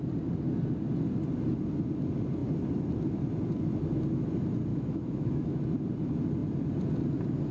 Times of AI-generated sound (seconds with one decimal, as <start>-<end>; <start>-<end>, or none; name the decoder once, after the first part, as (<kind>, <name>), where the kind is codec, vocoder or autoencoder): 4.7-5.6 (autoencoder, DAC-VAE)

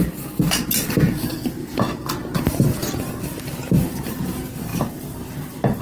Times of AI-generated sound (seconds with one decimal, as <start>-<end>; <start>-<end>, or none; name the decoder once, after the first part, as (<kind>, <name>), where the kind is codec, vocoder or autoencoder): 0.0-5.8 (vocoder, BigVGAN v2)

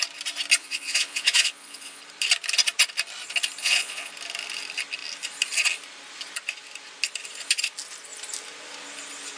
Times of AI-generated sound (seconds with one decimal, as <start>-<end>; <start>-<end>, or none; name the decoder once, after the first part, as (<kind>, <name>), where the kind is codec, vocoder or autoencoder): 0.6-2.0 (vocoder, Vocos); 3.6-4.1